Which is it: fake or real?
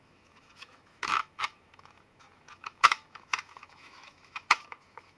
fake